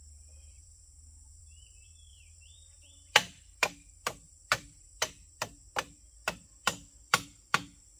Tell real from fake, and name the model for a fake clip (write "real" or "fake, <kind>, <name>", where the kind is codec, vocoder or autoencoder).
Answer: fake, vocoder, BigVGAN v2